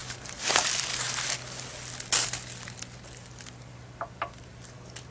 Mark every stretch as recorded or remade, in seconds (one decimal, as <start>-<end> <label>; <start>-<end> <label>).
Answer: 0.0-5.1 recorded